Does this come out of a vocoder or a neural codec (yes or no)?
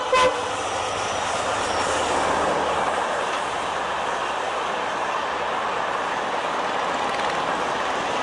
no